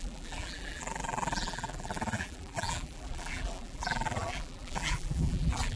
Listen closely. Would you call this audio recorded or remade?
remade